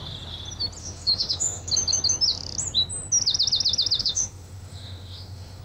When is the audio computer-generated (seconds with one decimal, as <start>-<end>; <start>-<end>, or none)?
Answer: 0.8-1.7; 4.0-5.6